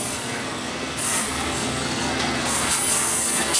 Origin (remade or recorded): remade